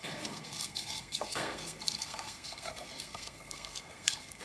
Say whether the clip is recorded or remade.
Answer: remade